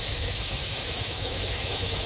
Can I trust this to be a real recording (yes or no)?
no